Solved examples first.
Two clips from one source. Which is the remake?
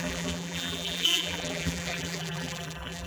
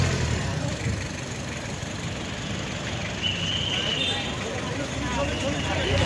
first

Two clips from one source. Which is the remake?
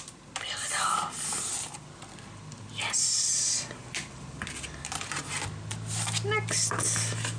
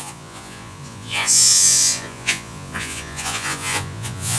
second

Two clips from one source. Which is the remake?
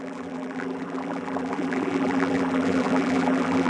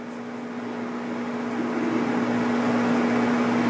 first